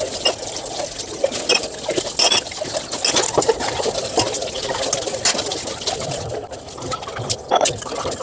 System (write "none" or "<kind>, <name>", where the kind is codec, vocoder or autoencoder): none